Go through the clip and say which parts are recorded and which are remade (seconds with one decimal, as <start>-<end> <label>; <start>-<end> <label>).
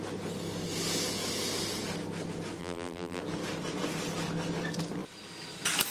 0.0-2.6 recorded; 2.6-3.2 remade; 3.2-5.9 recorded